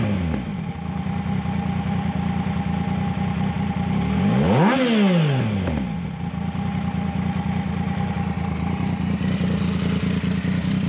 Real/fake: real